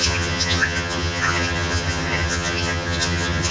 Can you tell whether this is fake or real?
fake